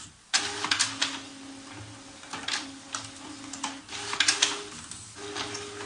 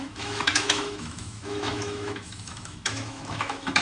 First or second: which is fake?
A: second